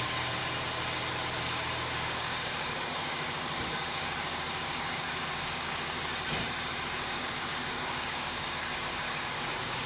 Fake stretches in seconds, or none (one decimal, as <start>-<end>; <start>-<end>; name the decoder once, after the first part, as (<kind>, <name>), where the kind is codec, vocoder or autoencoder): 0.0-0.4 (codec, DAC); 1.4-6.1; 6.8-9.9